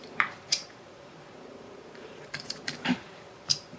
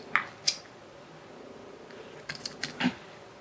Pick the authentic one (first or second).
second